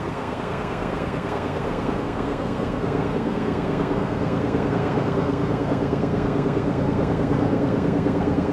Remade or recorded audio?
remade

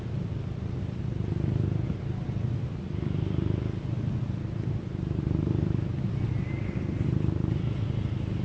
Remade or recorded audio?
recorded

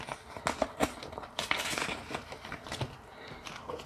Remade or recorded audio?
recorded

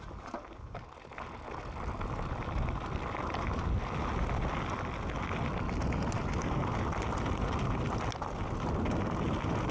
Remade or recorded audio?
recorded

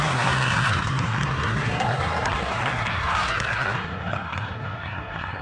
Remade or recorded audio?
remade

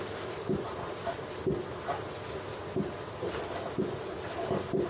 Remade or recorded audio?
recorded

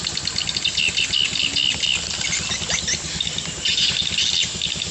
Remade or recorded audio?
recorded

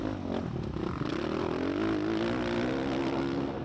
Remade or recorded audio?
recorded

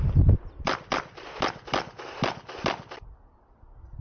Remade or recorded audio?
recorded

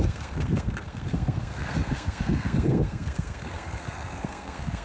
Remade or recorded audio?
remade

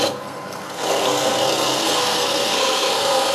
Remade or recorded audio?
remade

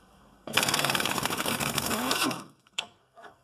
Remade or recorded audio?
remade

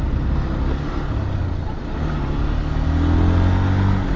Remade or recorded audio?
recorded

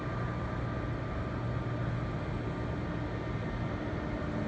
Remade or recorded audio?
recorded